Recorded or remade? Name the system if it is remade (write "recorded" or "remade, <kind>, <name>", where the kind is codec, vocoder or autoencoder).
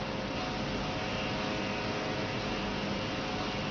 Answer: recorded